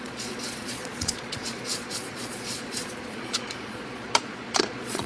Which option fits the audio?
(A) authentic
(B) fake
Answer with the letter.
B